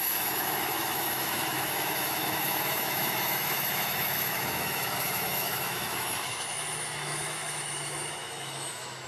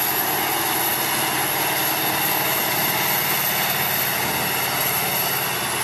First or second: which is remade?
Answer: first